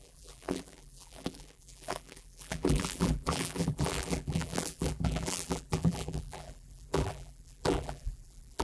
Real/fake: fake